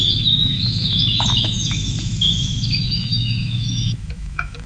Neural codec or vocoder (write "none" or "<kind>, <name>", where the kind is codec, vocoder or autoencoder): autoencoder, DAC-VAE